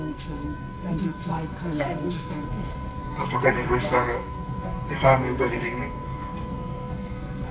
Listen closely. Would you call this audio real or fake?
fake